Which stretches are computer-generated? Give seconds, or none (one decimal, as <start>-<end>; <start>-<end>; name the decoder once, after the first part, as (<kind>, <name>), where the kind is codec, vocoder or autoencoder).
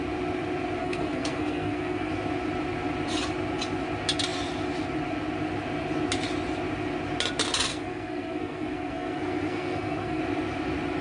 0.8-2.1 (codec, SNAC); 7.7-10.2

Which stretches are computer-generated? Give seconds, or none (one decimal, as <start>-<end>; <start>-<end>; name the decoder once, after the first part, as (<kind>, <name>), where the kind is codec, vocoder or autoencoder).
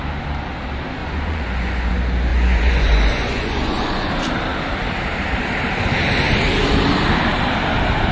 1.0-1.9 (vocoder, Vocos); 2.3-4.1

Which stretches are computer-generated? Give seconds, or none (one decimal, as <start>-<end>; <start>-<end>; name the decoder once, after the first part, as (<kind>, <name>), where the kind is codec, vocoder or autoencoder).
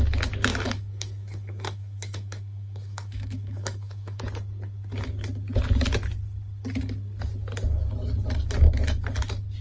0.5-4.2 (autoencoder, DAC-VAE)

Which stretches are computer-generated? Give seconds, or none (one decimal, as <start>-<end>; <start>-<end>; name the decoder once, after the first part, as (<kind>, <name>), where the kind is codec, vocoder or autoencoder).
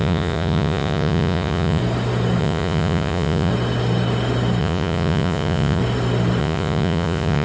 0.0-1.8 (vocoder, Vocos); 2.4-3.5; 4.6-5.8; 6.4-7.4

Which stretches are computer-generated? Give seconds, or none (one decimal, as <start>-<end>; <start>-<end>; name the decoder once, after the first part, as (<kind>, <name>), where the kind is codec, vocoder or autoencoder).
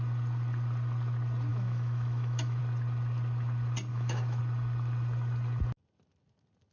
1.5-2.6 (autoencoder, DAC-VAE); 3.9-4.4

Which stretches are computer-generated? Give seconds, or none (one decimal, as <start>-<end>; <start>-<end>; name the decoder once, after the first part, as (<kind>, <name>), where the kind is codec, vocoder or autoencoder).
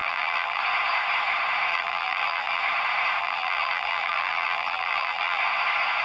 0.0-0.6 (vocoder, BigVGAN v2); 1.7-2.6; 3.2-5.4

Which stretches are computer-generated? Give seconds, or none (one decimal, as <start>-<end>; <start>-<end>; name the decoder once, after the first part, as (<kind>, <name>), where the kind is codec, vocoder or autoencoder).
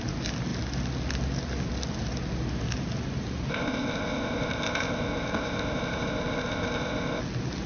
3.5-7.2 (codec, ZipCodec)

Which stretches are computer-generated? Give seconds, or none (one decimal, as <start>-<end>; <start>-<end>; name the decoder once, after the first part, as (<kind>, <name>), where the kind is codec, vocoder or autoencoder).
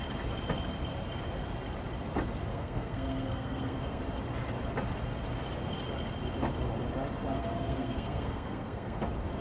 2.5-4.0 (codec, SNAC); 7.4-9.0